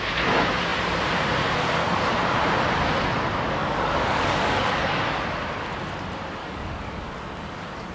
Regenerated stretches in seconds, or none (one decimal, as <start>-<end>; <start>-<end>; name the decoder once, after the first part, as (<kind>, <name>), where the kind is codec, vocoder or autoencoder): 3.6-5.0 (codec, DAC); 6.4-7.9